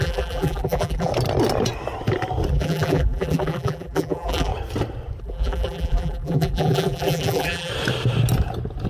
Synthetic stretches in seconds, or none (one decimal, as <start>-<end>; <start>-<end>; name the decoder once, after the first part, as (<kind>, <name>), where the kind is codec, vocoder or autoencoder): 0.0-1.1 (vocoder, BigVGAN v2); 2.5-4.5; 5.2-7.7